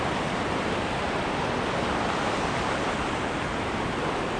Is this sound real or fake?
real